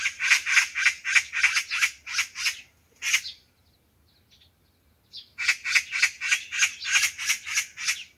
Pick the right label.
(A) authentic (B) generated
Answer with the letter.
A